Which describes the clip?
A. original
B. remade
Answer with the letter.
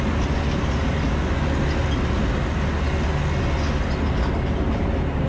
A